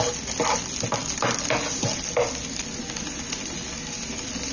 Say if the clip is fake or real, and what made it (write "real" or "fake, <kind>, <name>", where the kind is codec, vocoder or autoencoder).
real